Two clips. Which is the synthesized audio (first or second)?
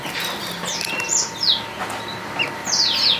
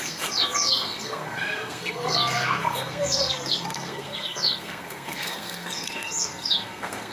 second